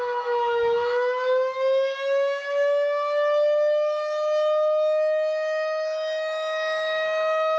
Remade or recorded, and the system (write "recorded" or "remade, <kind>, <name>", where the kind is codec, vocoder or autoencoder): remade, autoencoder, DAC-VAE